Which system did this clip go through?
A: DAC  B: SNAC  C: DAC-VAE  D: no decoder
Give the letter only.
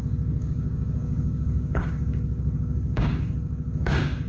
A